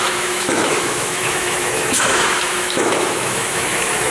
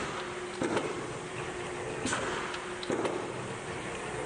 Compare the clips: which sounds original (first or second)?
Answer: second